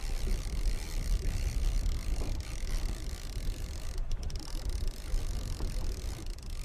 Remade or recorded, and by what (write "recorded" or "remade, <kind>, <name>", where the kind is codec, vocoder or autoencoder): remade, vocoder, BigVGAN v2